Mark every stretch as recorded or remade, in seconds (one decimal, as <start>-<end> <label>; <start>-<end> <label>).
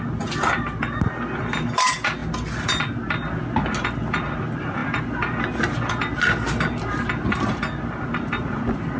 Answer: 0.0-9.0 recorded